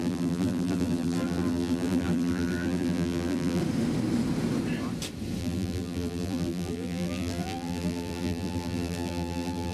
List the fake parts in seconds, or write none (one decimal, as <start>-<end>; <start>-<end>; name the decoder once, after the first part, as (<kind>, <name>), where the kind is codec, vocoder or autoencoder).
0.0-3.6 (vocoder, BigVGAN v2); 5.4-9.7